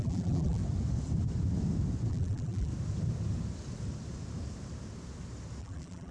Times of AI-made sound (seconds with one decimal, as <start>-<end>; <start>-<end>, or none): 0.0-0.6; 2.1-2.7; 5.6-6.1